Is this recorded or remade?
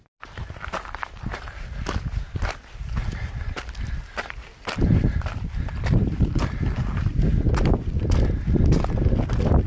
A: recorded